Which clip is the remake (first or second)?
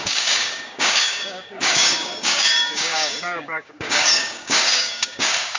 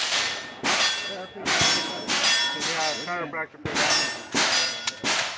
first